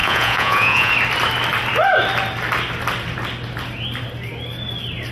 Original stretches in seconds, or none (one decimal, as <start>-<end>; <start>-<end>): 0.9-5.1